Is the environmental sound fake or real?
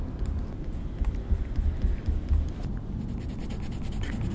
real